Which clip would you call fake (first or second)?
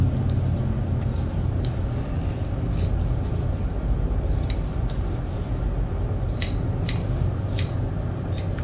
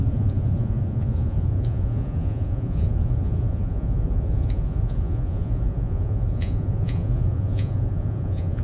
second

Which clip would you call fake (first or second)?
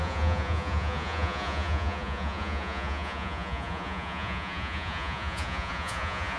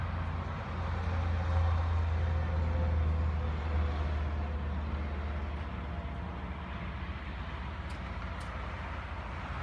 first